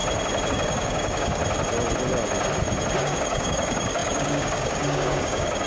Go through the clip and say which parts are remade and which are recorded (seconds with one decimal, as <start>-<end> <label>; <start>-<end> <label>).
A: 0.0-0.5 recorded; 0.5-1.4 remade; 1.4-3.0 recorded; 3.0-5.7 remade